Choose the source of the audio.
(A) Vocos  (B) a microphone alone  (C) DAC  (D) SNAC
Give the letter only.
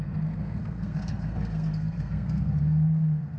D